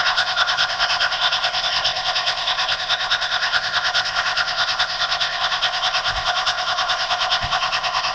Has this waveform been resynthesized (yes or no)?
yes